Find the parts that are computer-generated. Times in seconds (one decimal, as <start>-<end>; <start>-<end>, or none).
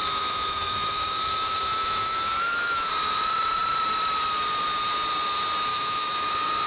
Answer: 0.0-2.9; 5.7-6.3